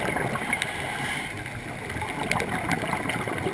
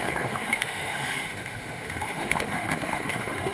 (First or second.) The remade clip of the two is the second